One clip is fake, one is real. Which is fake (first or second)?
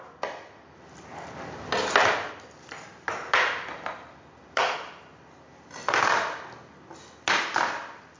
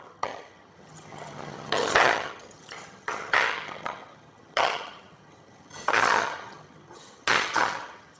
second